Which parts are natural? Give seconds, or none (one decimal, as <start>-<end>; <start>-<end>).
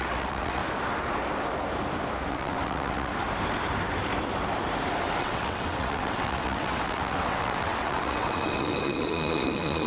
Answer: 0.6-2.3; 3.1-5.2